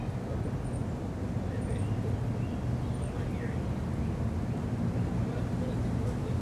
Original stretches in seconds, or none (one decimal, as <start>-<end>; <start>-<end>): 0.0-6.4